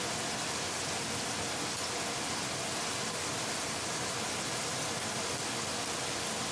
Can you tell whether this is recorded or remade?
recorded